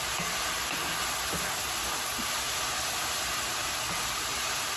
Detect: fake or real real